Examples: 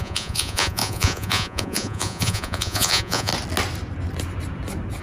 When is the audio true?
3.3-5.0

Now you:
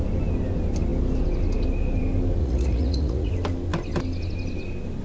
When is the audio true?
0.0-2.4; 3.3-5.0

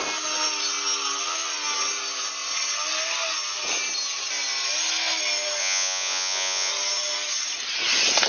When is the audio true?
0.0-5.6; 6.7-8.3